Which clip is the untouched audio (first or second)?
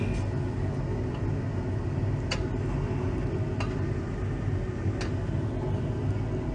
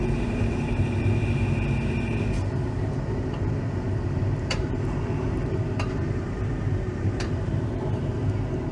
first